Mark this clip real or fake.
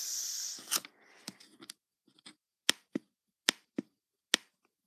real